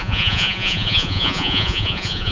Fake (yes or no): yes